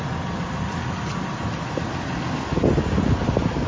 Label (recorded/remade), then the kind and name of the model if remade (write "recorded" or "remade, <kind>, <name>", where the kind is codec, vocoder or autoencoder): recorded